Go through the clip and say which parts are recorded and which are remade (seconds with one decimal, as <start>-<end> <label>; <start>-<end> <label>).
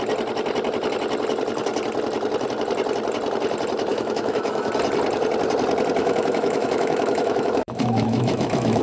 0.0-3.9 recorded; 3.9-4.7 remade; 4.7-6.0 recorded; 6.0-8.8 remade